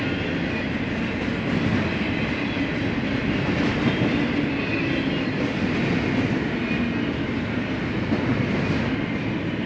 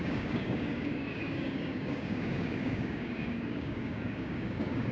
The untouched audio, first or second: first